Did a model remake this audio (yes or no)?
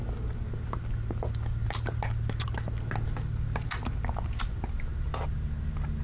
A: no